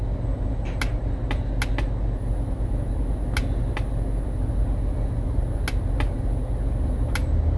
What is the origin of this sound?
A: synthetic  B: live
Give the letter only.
B